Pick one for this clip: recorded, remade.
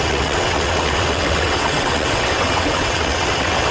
remade